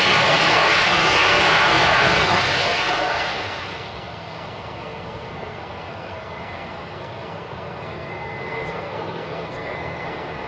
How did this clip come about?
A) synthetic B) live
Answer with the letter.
A